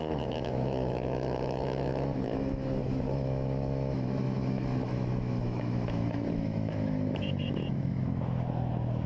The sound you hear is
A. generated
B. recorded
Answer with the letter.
A